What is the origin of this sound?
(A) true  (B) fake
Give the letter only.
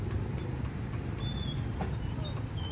A